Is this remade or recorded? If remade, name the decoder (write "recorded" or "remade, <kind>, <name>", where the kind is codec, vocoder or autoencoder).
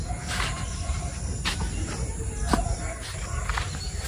recorded